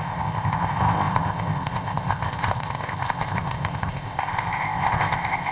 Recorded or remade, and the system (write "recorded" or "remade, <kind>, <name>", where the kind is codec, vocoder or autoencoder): remade, codec, ZipCodec